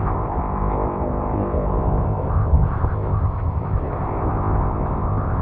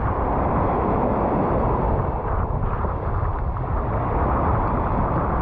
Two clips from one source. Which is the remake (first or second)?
first